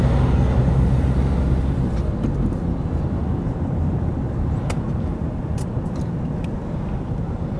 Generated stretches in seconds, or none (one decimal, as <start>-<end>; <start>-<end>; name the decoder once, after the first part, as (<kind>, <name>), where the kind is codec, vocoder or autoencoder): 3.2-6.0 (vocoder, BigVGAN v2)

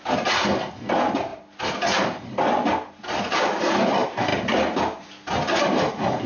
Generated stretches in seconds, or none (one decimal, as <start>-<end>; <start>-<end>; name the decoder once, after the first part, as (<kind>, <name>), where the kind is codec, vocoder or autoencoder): none

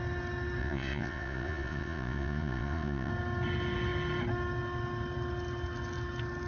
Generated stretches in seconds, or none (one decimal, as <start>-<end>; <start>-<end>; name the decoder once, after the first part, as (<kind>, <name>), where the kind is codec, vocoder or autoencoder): 0.6-3.1 (vocoder, Vocos)

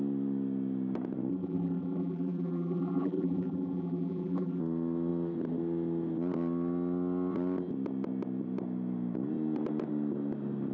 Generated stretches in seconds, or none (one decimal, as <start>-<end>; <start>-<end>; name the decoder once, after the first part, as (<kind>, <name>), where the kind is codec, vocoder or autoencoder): 1.3-4.6 (vocoder, BigVGAN v2)